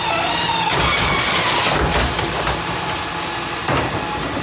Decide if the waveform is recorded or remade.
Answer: recorded